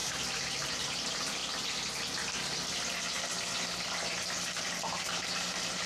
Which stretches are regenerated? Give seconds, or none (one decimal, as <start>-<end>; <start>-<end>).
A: 0.0-1.4; 4.9-5.9